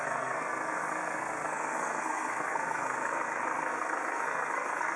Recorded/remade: remade